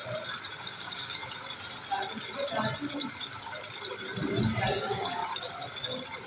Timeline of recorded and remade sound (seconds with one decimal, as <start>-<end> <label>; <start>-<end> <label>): 0.0-0.6 recorded; 0.6-1.2 remade; 1.2-4.8 recorded; 4.8-5.2 remade; 5.2-6.3 recorded